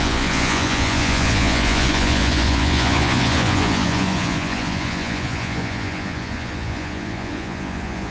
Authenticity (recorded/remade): remade